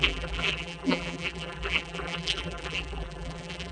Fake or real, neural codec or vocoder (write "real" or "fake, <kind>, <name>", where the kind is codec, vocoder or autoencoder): fake, vocoder, BigVGAN v2